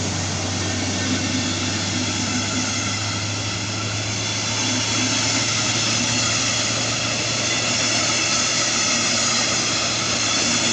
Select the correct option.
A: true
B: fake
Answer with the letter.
A